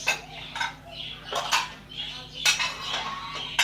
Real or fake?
real